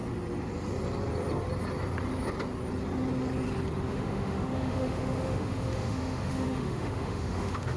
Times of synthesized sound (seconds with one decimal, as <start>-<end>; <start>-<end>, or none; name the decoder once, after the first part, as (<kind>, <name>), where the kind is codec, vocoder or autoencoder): 3.9-7.8 (autoencoder, DAC-VAE)